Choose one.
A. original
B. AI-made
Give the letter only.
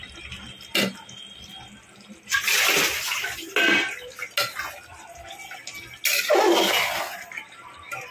A